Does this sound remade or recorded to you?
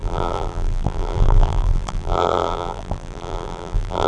remade